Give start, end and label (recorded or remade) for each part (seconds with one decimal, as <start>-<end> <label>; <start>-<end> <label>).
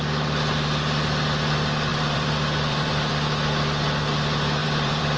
0.0-1.9 recorded; 1.9-3.1 remade; 3.1-4.6 recorded; 4.6-5.2 remade